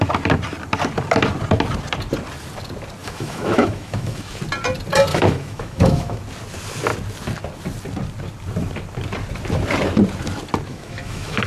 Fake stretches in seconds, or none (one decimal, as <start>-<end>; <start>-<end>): 3.0-4.4; 5.1-6.2; 10.7-11.5